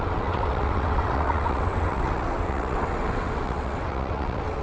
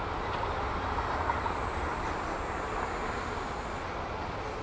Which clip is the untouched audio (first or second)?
second